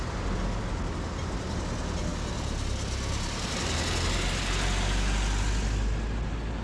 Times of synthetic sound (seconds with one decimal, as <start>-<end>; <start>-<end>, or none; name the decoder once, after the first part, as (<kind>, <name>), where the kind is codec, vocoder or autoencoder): none